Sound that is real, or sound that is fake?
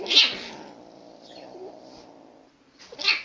real